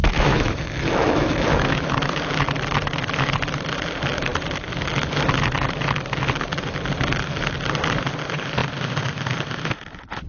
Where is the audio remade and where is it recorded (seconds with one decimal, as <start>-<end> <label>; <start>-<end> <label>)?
0.0-2.2 remade; 2.2-10.3 recorded